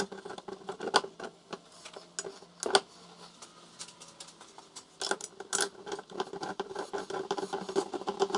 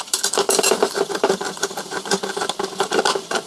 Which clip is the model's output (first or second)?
second